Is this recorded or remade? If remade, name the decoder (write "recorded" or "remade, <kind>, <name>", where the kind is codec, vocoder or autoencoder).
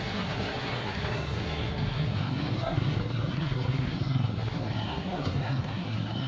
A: remade, codec, SNAC